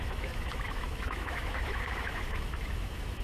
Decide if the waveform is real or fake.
fake